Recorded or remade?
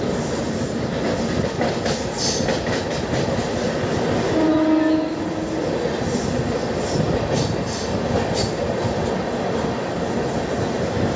recorded